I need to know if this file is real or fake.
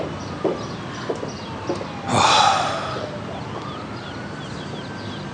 real